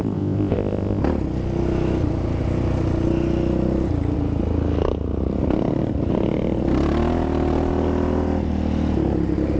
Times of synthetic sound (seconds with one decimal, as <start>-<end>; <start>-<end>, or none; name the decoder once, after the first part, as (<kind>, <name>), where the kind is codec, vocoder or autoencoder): 0.0-1.0 (codec, ZipCodec)